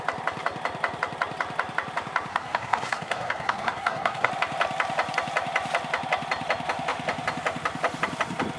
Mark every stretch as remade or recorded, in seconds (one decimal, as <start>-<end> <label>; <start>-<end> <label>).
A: 0.0-2.3 recorded; 2.3-4.3 remade; 4.3-8.6 recorded

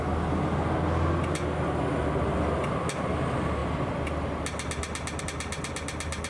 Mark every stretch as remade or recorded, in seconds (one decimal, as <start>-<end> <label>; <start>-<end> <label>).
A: 0.0-6.3 recorded

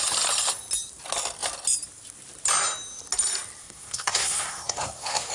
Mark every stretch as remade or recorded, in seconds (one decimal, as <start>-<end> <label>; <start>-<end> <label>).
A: 0.0-3.6 recorded; 3.6-5.3 remade